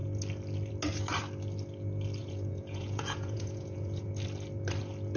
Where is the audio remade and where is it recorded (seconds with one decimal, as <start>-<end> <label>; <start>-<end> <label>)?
0.0-2.2 recorded; 2.2-4.1 remade; 4.1-5.2 recorded